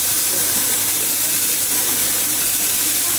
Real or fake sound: fake